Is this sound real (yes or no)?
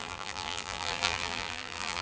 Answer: no